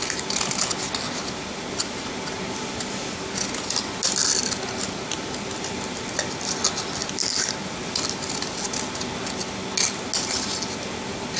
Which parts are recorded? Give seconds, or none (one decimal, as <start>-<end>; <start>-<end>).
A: 0.0-11.4